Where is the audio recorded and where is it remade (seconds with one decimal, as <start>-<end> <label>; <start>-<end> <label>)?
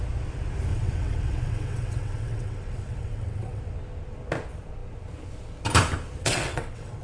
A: 0.0-0.7 recorded; 0.7-3.6 remade; 3.6-6.2 recorded; 6.2-7.0 remade